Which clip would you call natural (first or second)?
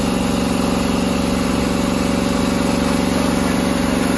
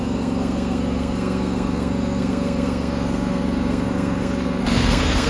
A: first